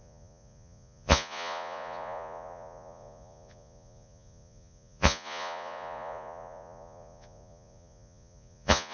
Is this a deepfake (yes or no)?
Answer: yes